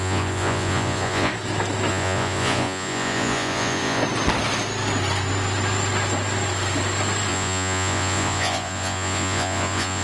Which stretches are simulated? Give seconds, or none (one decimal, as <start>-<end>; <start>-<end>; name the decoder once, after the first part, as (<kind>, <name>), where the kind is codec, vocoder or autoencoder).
0.0-1.3 (vocoder, Vocos); 1.9-4.0; 7.3-10.0